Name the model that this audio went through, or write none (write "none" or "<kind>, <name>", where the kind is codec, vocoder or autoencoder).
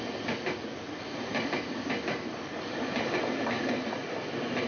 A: none